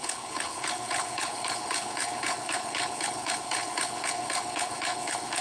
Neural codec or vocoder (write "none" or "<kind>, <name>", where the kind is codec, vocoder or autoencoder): codec, HILCodec